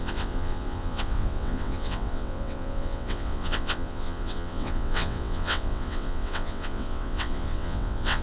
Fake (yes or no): yes